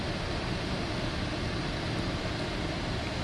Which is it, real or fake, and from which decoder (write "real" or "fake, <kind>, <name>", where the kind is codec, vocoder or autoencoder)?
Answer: real